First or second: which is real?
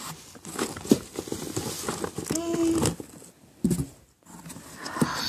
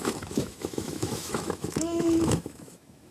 first